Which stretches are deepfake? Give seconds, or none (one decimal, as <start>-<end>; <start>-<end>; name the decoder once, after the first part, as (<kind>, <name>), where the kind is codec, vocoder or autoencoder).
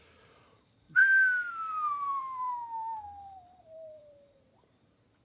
0.0-1.0 (vocoder, BigVGAN v2); 1.5-2.6; 3.6-5.2